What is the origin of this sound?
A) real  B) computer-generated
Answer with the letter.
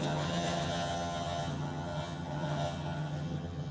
B